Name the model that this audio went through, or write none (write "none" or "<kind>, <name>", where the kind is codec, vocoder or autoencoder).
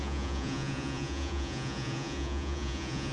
vocoder, Vocos